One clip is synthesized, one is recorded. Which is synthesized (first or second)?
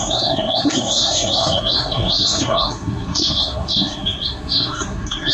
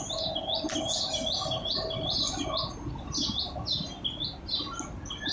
first